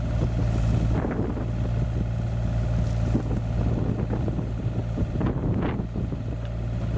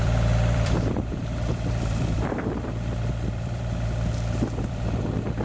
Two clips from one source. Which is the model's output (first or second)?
second